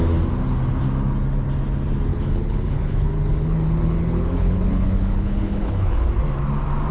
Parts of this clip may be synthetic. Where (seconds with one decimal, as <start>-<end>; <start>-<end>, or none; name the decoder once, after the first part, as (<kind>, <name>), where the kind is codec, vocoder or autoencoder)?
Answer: 2.1-6.1 (codec, HILCodec)